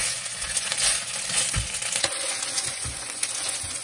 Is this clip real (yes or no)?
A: no